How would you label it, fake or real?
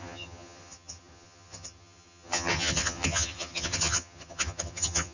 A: fake